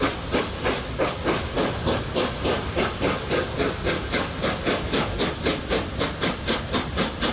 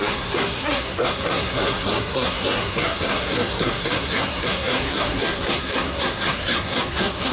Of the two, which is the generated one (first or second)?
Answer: second